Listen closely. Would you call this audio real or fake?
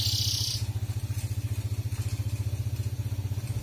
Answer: real